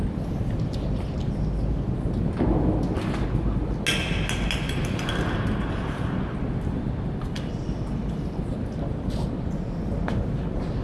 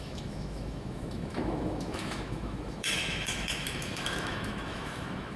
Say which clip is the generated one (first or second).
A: second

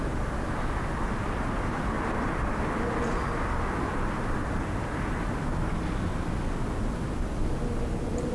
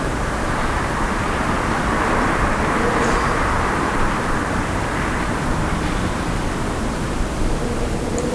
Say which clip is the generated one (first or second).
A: second